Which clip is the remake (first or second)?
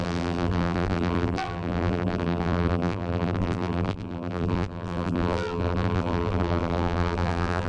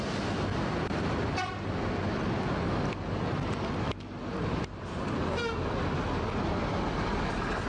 first